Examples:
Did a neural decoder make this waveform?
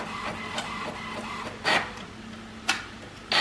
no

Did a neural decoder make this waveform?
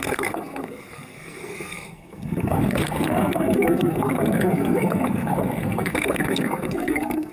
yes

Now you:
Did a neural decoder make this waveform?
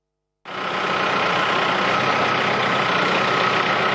no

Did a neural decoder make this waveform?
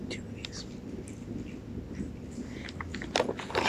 no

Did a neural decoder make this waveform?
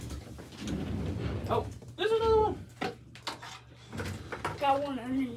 no